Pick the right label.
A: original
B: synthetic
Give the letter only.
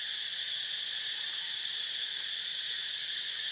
B